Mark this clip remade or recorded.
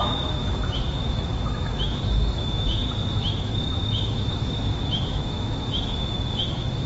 remade